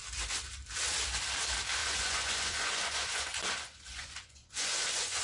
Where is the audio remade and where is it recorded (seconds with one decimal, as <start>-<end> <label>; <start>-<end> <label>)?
0.0-1.8 recorded; 1.8-5.2 remade